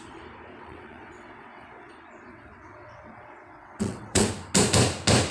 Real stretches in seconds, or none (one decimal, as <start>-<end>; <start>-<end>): 0.0-0.5; 1.9-2.3; 4.3-5.3